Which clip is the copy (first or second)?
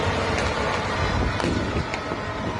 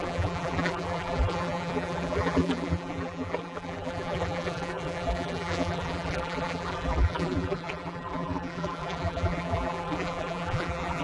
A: second